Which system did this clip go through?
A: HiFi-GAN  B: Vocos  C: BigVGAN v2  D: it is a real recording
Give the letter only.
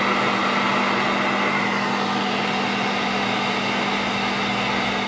D